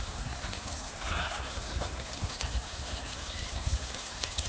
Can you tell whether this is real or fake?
fake